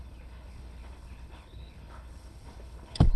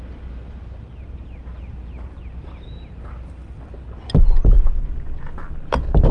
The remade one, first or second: first